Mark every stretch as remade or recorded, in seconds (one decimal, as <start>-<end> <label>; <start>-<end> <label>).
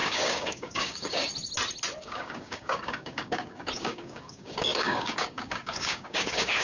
0.0-1.3 remade; 1.3-2.0 recorded; 2.0-6.6 remade